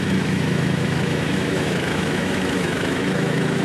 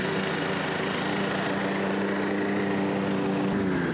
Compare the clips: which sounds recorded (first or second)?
second